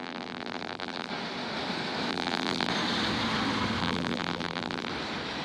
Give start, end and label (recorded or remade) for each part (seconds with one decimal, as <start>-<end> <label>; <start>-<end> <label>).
0.0-1.1 remade; 1.1-2.1 recorded; 2.1-2.7 remade; 2.7-3.8 recorded; 3.8-4.9 remade; 4.9-5.4 recorded